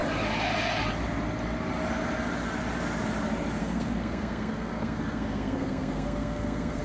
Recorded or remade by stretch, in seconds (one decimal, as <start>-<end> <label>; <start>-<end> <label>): 0.0-3.6 recorded; 3.6-6.8 remade